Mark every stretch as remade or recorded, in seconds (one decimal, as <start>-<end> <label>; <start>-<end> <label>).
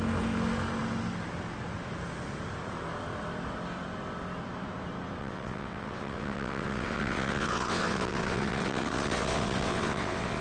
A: 0.0-5.2 recorded; 5.2-10.4 remade